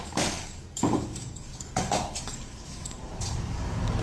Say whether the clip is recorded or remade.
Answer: remade